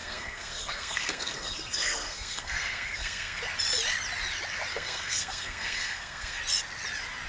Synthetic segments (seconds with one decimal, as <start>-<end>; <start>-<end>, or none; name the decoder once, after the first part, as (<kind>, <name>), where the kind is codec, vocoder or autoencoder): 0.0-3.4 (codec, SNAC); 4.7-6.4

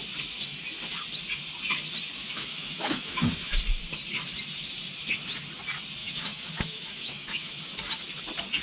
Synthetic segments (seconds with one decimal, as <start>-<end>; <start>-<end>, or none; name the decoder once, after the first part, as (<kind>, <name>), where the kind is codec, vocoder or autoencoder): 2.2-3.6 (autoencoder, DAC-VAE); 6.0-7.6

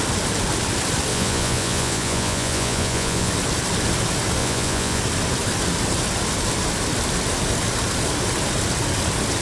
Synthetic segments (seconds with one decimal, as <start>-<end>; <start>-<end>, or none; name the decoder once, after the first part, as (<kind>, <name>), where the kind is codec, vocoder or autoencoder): 1.1-3.3 (vocoder, Vocos); 4.4-5.0